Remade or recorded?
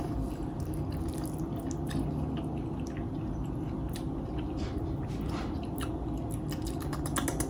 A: recorded